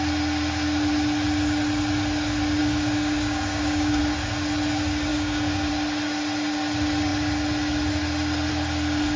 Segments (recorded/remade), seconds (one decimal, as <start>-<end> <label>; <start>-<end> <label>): 0.0-2.6 recorded; 2.6-4.0 remade; 4.0-5.1 recorded; 5.1-5.7 remade; 5.7-9.2 recorded